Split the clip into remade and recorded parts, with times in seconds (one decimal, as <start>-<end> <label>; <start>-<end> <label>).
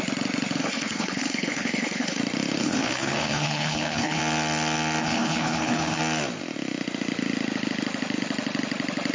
0.0-0.6 recorded; 0.6-2.2 remade; 2.2-2.6 recorded; 2.6-4.2 remade; 4.2-5.0 recorded; 5.0-6.0 remade; 6.0-9.1 recorded